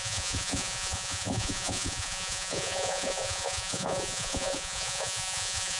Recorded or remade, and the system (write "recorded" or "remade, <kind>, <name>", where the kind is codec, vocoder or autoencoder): remade, vocoder, Vocos